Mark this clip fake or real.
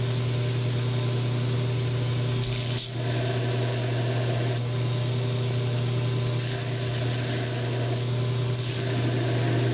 real